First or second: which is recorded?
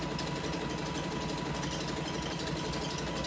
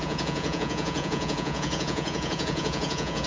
first